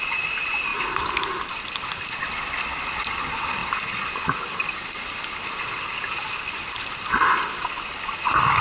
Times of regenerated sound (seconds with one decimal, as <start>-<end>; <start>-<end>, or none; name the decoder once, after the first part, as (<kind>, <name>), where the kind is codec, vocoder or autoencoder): 3.6-4.1 (vocoder, BigVGAN v2)